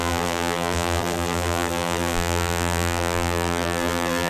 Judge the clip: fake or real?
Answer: fake